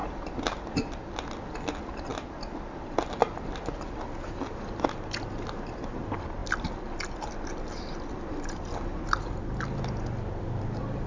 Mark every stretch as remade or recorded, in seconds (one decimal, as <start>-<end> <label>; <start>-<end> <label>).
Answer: 0.0-11.1 recorded